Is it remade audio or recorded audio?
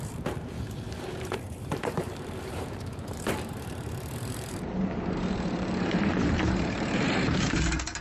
remade